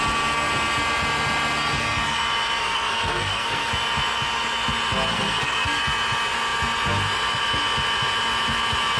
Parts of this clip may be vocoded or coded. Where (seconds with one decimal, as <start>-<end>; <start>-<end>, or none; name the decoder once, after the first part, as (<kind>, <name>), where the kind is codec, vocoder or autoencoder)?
2.6-3.7 (codec, SNAC); 5.1-5.8